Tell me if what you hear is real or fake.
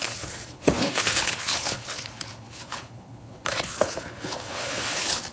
fake